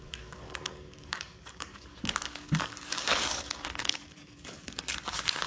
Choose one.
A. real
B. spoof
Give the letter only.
B